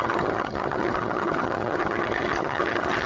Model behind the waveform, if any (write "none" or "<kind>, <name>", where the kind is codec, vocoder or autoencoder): vocoder, HiFi-GAN